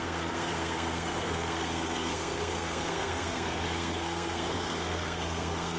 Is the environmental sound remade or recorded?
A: remade